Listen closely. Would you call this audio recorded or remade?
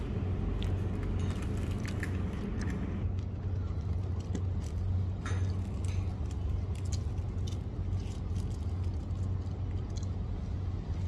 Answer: recorded